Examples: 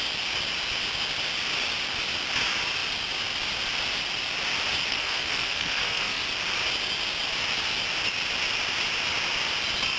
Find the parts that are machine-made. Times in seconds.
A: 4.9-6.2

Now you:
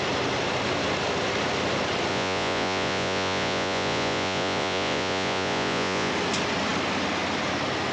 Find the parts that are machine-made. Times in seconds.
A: 2.1-6.1

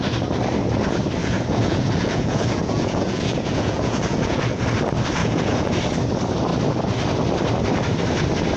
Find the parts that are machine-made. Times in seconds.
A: 1.2-4.6; 5.2-5.7

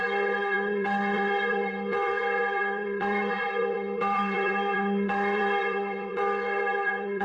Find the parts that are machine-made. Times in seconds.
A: 0.0-7.2

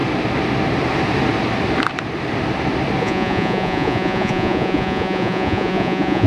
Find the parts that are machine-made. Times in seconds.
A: 3.0-6.3

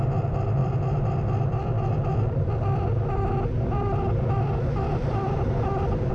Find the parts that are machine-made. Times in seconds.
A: 0.6-4.3; 4.9-6.1